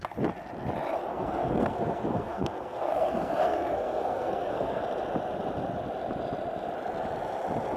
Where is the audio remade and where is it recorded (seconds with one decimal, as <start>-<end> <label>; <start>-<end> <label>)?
0.0-1.1 recorded; 1.1-4.8 remade; 4.8-7.8 recorded